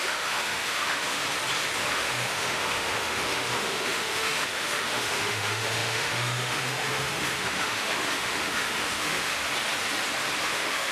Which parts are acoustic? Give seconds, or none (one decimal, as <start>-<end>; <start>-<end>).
1.2-1.9; 9.4-10.4